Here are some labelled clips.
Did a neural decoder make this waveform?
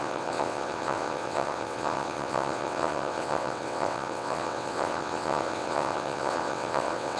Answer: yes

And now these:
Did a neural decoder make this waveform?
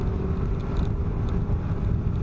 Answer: no